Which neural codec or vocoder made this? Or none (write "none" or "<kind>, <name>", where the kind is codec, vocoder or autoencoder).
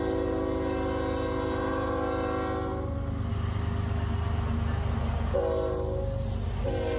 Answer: none